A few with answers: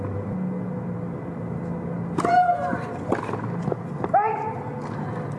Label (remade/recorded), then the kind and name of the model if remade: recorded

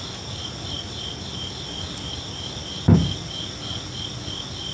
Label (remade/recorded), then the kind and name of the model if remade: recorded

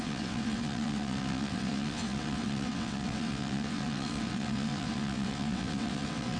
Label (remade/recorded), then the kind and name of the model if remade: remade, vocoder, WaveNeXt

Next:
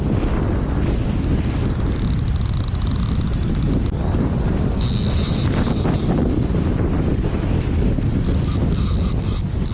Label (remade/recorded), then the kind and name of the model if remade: recorded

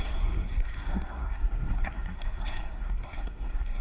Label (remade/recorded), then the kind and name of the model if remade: remade, codec, SNAC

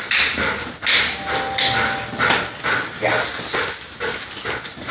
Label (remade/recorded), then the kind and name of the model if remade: recorded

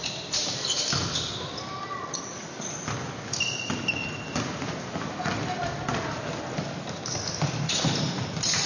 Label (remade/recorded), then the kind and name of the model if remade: recorded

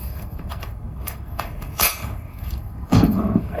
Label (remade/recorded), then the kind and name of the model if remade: remade, codec, SNAC